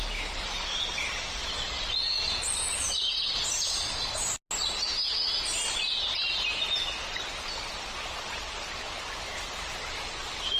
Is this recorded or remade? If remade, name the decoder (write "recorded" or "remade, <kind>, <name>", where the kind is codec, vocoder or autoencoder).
recorded